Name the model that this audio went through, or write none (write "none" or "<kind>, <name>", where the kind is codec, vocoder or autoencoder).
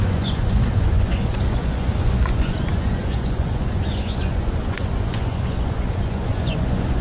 vocoder, Vocos